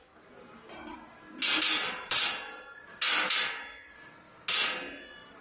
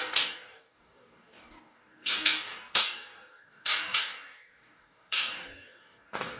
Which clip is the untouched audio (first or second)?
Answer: first